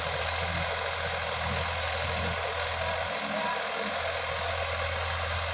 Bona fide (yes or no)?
yes